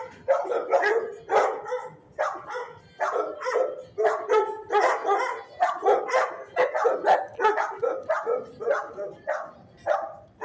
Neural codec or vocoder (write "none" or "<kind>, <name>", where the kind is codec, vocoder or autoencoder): none